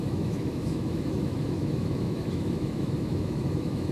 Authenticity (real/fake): fake